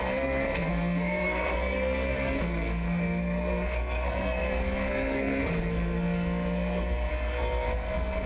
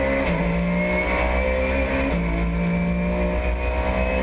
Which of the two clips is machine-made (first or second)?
first